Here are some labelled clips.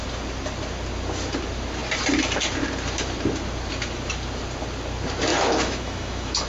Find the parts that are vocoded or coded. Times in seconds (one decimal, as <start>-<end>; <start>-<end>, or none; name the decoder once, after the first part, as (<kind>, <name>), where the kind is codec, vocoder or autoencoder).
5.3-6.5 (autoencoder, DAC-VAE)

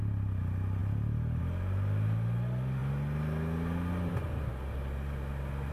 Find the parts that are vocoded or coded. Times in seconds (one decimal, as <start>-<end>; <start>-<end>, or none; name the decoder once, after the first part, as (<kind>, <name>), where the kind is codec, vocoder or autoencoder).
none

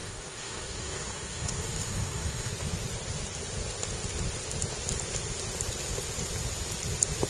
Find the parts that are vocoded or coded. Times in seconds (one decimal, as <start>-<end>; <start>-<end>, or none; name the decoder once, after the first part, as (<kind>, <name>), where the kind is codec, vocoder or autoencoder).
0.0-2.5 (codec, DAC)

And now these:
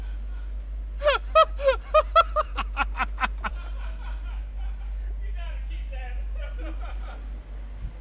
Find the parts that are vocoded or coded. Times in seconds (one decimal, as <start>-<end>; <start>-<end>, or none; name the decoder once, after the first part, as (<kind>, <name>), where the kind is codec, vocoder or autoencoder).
none